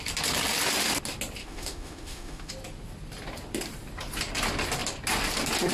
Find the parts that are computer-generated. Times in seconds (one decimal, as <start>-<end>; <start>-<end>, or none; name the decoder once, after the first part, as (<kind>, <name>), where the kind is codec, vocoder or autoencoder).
1.4-2.5 (autoencoder, DAC-VAE)